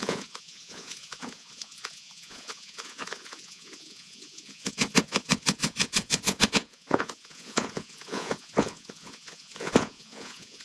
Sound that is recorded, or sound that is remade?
remade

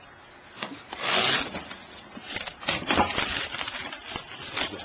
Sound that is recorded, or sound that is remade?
recorded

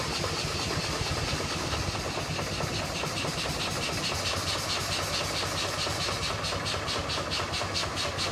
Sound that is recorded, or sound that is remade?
recorded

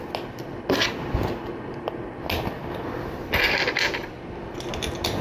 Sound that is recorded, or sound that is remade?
recorded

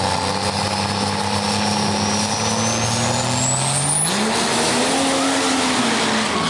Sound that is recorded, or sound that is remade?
recorded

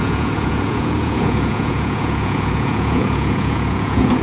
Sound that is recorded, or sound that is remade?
remade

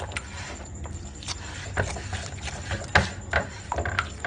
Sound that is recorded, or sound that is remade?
recorded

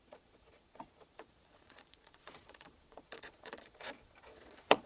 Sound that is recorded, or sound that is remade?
remade